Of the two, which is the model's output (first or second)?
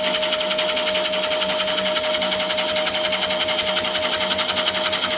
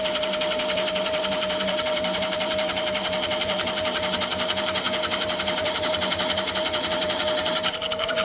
second